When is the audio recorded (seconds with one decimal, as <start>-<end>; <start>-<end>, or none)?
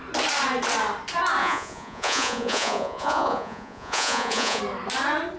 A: 0.0-1.4; 4.6-5.4